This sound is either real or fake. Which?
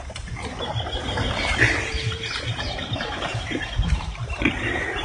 fake